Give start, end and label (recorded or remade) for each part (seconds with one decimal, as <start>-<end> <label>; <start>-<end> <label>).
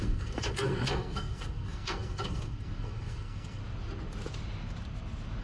0.0-3.6 remade; 3.6-5.4 recorded